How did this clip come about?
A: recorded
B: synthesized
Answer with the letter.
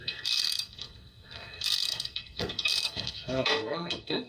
B